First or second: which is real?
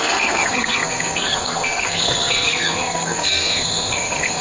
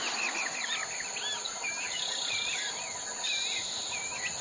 second